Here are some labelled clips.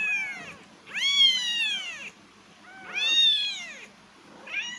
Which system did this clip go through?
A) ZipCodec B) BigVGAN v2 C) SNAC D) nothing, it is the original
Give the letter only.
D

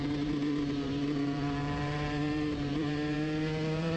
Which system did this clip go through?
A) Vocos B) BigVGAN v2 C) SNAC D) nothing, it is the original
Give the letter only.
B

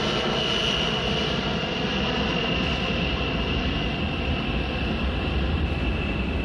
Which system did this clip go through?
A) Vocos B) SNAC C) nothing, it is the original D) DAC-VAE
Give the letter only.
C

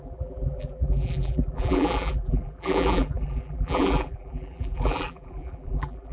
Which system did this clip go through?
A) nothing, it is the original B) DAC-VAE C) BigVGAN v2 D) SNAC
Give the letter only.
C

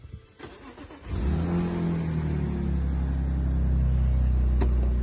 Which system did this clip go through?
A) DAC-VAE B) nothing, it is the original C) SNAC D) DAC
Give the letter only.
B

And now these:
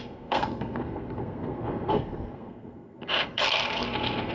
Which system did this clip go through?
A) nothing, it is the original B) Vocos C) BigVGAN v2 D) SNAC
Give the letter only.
D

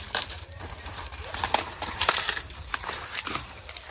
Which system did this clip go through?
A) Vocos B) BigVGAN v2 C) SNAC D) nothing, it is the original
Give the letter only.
B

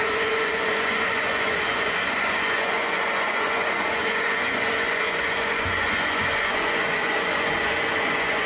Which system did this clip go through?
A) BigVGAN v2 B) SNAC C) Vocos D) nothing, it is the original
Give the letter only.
C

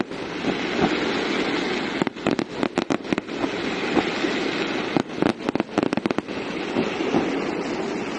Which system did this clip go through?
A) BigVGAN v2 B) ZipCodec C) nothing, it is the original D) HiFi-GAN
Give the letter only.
C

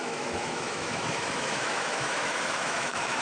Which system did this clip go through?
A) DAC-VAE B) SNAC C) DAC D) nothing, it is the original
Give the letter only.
A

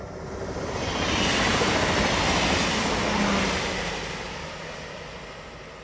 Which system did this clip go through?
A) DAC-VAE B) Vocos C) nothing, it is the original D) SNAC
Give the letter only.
C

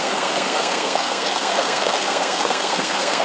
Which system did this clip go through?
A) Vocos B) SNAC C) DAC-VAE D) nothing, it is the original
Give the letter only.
B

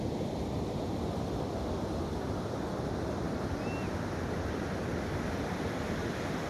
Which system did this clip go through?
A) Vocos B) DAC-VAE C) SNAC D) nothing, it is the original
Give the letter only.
D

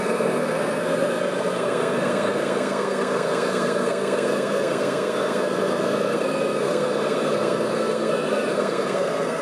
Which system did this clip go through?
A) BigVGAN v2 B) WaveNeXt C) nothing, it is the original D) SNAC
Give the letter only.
D